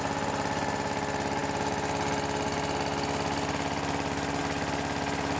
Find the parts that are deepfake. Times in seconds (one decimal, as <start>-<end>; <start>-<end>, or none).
none